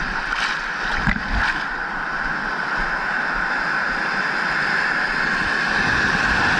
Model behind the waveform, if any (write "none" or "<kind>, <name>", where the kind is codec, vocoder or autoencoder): none